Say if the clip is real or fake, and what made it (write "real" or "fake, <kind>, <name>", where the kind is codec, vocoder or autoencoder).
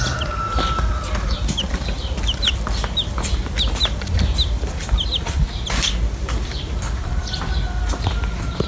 real